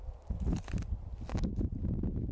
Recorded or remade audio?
recorded